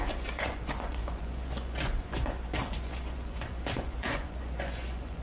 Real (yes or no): no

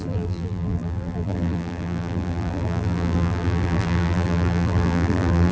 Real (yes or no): no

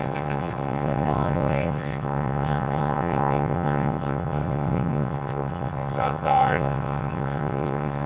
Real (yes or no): no